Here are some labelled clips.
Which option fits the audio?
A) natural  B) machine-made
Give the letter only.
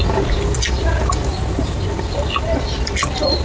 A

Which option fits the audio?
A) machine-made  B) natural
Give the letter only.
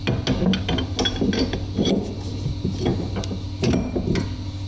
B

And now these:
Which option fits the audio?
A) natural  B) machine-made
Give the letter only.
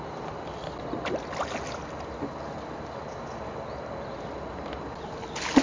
A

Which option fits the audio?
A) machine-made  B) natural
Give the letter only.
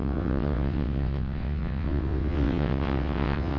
A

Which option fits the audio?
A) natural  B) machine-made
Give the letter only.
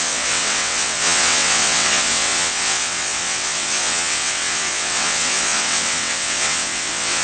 B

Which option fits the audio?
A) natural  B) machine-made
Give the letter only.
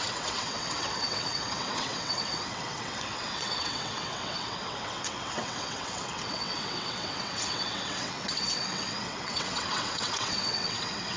B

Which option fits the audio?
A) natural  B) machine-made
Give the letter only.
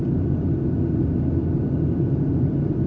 A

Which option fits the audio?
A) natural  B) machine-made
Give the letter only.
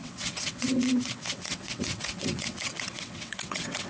B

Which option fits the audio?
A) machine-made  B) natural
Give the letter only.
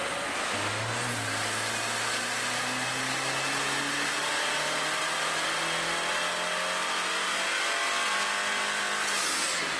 B